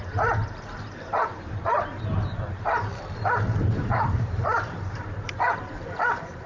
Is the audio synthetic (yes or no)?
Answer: yes